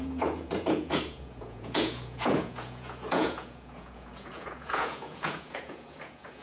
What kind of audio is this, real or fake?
fake